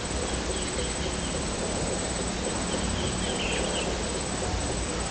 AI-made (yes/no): no